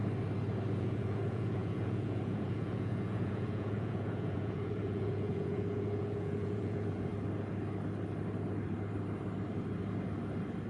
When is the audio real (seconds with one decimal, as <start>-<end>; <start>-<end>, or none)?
0.0-0.8; 7.1-10.7